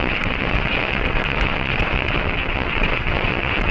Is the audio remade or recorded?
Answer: remade